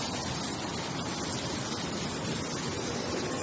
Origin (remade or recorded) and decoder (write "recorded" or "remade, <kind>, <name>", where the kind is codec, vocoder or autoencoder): recorded